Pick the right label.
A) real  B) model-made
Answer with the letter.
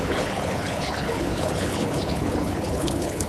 B